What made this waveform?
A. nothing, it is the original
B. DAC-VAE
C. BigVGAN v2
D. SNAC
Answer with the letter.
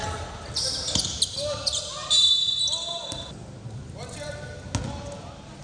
A